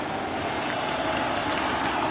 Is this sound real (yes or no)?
yes